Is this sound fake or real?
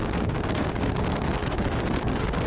fake